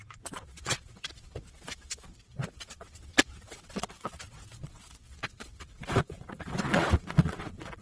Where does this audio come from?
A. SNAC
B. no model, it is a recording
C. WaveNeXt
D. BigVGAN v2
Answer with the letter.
C